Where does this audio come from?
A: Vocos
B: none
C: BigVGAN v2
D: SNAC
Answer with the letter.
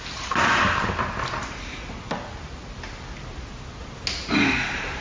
B